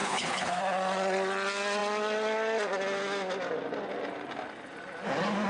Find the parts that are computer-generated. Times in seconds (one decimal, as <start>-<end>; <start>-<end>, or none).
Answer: 0.0-0.6